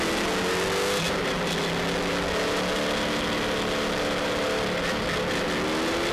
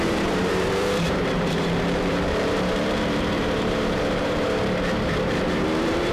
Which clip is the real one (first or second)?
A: first